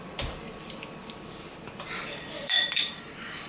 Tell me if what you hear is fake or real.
fake